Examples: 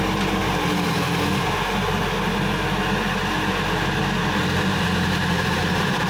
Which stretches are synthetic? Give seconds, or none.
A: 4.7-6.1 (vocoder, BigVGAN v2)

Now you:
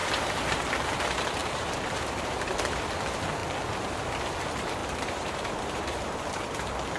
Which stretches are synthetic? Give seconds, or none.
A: 0.0-0.7 (vocoder, BigVGAN v2); 1.4-2.9; 4.8-6.2